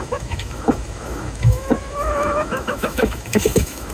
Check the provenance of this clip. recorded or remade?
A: remade